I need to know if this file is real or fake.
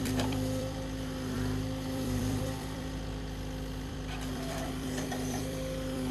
fake